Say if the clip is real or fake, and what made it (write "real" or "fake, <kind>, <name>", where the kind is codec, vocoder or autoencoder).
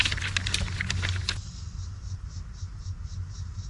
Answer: real